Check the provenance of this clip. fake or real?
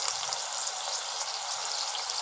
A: real